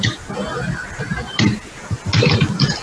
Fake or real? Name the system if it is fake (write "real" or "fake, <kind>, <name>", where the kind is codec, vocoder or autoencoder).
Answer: real